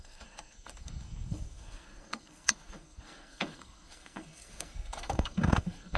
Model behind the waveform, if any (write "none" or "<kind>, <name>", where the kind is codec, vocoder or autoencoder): codec, SNAC